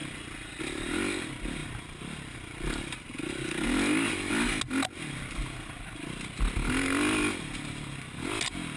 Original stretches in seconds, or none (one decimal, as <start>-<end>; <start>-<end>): 0.0-8.8